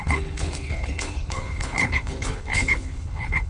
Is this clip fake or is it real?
fake